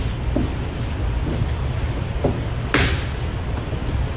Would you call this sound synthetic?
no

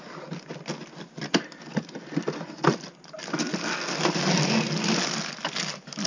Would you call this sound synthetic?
no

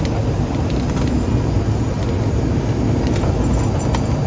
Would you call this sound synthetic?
no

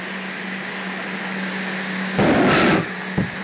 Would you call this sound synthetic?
no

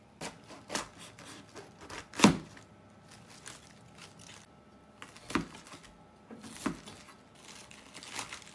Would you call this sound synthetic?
no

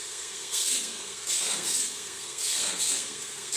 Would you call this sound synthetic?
yes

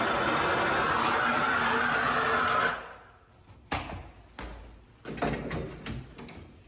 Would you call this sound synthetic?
no